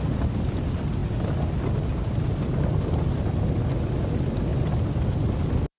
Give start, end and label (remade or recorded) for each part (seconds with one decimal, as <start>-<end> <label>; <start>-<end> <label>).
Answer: 0.0-5.8 recorded